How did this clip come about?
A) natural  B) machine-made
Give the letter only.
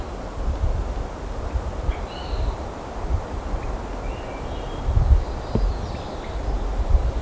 B